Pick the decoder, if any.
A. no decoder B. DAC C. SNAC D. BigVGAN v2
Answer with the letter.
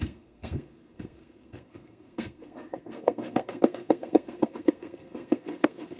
C